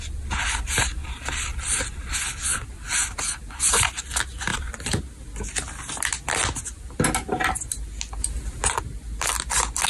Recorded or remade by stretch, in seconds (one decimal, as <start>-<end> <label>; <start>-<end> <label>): 0.0-9.9 recorded